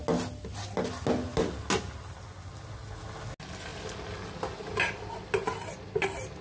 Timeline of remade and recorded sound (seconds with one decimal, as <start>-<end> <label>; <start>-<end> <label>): 0.0-6.4 recorded

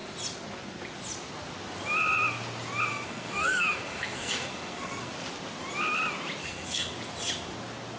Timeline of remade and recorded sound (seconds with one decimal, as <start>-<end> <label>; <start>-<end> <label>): 0.0-2.9 recorded; 2.9-5.1 remade; 5.1-6.4 recorded; 6.4-6.9 remade; 6.9-8.0 recorded

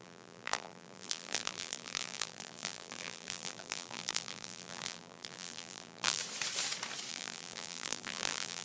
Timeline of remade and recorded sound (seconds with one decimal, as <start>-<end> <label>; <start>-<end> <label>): 0.0-6.2 remade; 6.2-7.1 recorded; 7.1-8.6 remade

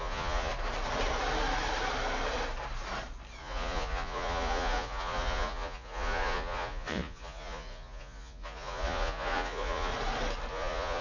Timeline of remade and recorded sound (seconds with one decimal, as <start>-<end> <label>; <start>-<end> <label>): 0.0-0.5 remade; 0.5-3.4 recorded; 3.4-9.9 remade; 9.9-10.5 recorded; 10.5-11.0 remade

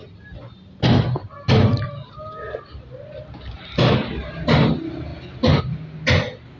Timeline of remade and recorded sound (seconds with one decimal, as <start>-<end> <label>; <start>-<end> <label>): 0.0-6.6 recorded

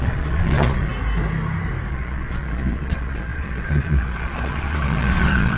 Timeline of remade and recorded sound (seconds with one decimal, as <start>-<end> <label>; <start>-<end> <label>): 0.0-0.9 remade; 0.9-1.9 recorded; 1.9-5.6 remade

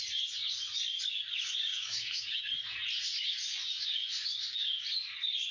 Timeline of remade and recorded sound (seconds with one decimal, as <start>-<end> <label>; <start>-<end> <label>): 0.0-1.7 recorded; 1.7-2.4 remade; 2.4-5.5 recorded

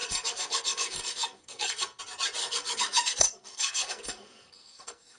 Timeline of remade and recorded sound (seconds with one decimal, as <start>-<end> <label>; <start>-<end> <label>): 0.0-2.0 remade; 2.0-2.4 recorded; 2.4-5.2 remade